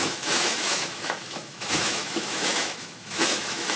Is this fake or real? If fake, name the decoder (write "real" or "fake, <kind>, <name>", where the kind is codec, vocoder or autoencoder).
fake, autoencoder, DAC-VAE